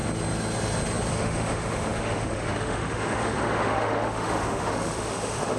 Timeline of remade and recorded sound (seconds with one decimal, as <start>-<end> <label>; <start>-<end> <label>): 0.0-1.1 recorded; 1.1-5.6 remade